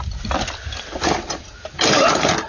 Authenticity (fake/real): real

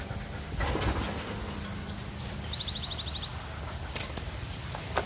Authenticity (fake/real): real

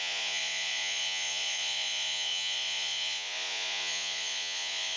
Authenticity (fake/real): fake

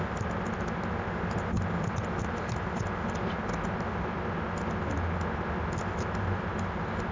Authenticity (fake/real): real